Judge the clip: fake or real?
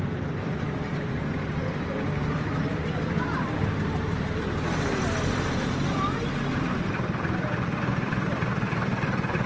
fake